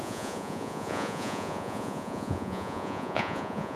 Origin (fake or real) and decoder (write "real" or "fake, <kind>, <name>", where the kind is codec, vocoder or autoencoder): fake, vocoder, Vocos